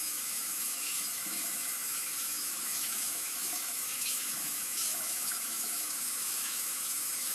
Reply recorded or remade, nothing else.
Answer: remade